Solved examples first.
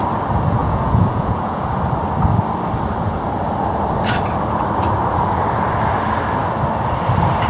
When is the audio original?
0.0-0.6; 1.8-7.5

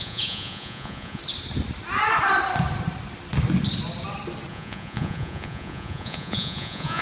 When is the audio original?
1.2-4.5

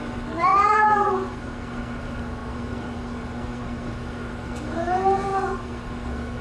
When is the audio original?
none

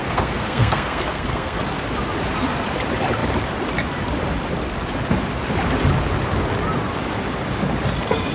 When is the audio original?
1.6-8.3

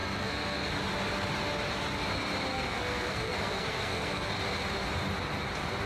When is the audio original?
0.7-2.5; 4.3-5.9

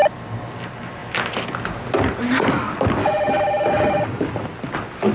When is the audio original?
0.0-3.0; 4.3-5.1

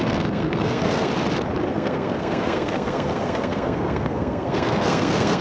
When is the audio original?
1.1-1.7